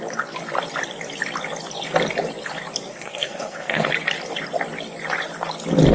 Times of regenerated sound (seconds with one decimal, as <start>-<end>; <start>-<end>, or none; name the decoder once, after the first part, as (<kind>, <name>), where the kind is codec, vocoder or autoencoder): 2.9-3.9 (codec, SNAC)